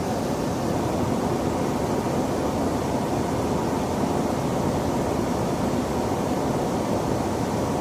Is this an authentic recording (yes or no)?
yes